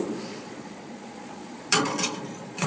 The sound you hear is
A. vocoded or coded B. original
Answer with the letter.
A